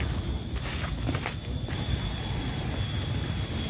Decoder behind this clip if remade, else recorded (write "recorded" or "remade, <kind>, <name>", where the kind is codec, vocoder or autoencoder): recorded